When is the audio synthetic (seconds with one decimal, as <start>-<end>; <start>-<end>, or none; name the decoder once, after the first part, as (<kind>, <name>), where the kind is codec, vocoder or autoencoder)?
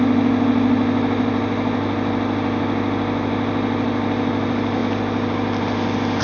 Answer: none